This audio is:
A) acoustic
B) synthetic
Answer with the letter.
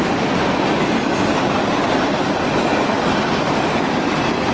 A